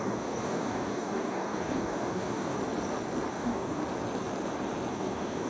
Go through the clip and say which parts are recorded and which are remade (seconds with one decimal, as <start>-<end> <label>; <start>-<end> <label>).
0.0-2.6 remade; 2.6-3.3 recorded; 3.3-3.8 remade; 3.8-4.9 recorded; 4.9-5.5 remade